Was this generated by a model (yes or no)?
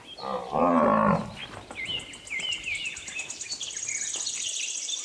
no